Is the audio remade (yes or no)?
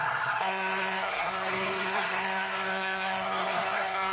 yes